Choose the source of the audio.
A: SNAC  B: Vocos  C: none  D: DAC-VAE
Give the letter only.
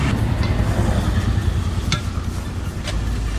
C